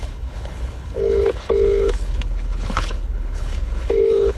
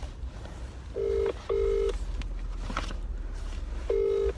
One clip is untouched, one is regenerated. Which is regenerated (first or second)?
first